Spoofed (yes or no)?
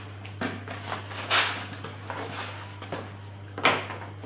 no